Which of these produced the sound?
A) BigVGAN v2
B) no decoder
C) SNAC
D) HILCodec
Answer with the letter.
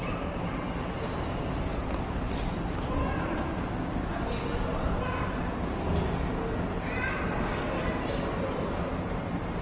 B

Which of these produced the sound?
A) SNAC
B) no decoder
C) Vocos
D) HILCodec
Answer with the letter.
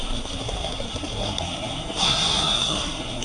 A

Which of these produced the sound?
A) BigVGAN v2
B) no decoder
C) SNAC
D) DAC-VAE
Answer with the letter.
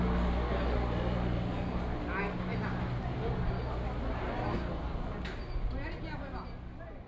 B